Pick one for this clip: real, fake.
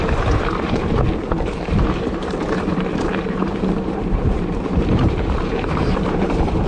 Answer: fake